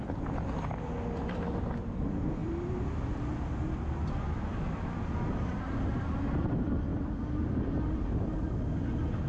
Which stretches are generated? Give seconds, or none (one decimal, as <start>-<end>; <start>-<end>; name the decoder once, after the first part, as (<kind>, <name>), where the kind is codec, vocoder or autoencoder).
none